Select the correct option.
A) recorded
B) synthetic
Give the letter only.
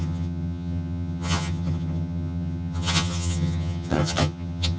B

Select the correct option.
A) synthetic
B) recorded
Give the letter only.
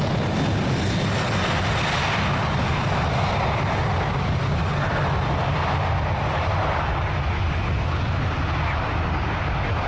B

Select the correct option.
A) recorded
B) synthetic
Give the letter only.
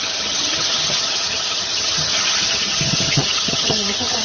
B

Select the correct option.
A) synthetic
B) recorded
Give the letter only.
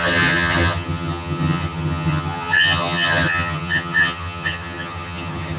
A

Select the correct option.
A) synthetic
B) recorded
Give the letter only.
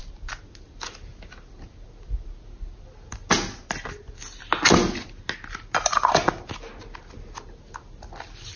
B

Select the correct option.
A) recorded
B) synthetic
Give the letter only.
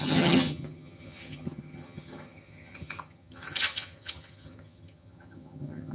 B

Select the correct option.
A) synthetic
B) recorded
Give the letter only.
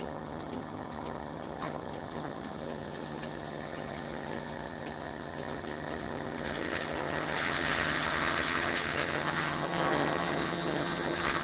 A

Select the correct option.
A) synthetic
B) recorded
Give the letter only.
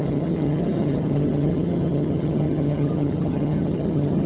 A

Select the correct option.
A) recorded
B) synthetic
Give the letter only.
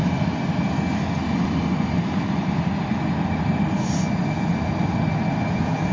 A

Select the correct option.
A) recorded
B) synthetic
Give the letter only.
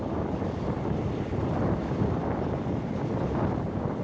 A